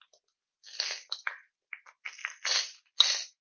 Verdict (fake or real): real